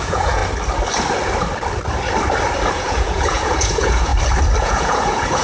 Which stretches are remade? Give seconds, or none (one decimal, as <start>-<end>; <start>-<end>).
0.0-0.4; 2.7-4.1; 4.6-5.4